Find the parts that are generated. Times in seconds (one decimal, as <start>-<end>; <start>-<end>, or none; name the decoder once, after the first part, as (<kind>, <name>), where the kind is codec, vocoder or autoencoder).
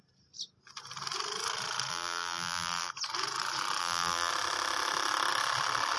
1.9-2.9 (vocoder, BigVGAN v2); 3.8-4.3